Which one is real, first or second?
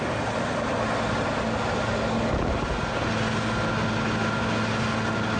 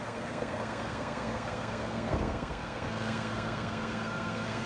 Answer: first